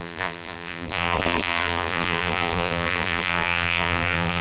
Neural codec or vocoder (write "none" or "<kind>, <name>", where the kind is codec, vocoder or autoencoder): vocoder, BigVGAN v2